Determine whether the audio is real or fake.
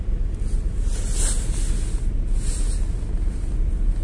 real